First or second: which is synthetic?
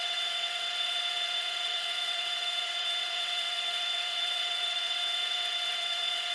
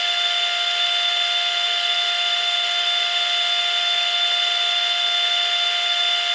first